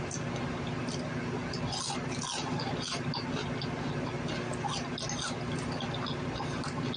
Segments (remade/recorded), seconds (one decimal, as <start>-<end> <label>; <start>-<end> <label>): 0.0-7.0 recorded